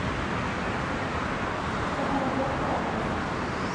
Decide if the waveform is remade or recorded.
recorded